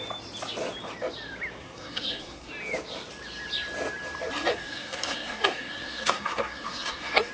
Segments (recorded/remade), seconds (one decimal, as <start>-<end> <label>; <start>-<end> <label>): 0.0-1.6 recorded; 1.6-2.5 remade; 2.5-4.5 recorded; 4.5-7.3 remade